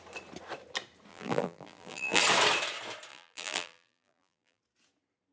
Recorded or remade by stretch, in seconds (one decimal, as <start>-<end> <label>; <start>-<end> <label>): 0.0-1.1 recorded; 1.1-2.2 remade; 2.2-3.1 recorded; 3.1-4.6 remade; 4.6-5.3 recorded